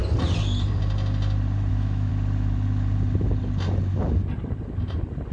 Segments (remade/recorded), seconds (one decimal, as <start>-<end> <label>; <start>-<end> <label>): 0.0-1.7 recorded; 1.7-2.1 remade; 2.1-5.3 recorded